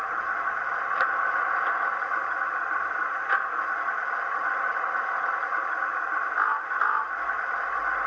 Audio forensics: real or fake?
real